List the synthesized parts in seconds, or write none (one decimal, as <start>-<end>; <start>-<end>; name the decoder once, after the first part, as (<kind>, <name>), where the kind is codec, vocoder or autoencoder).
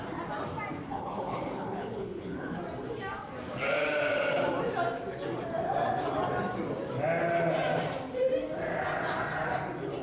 0.8-2.6 (codec, HILCodec)